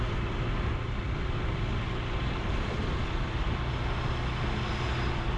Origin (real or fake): real